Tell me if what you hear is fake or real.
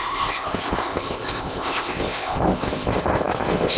fake